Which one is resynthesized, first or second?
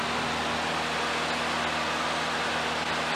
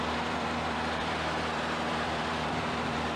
second